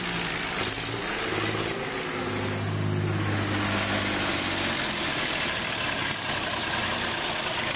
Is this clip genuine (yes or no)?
yes